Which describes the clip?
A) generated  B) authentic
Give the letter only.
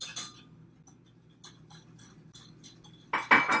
B